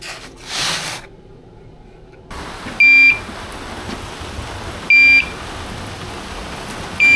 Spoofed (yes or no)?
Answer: no